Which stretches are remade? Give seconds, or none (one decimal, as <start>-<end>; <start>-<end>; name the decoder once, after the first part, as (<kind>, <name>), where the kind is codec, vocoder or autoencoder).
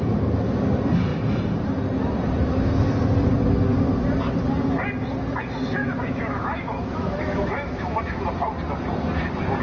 5.8-8.0 (autoencoder, DAC-VAE)